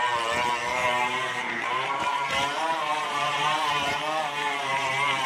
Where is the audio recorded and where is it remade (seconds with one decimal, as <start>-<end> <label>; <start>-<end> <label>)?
0.0-0.8 recorded; 0.8-4.0 remade; 4.0-5.3 recorded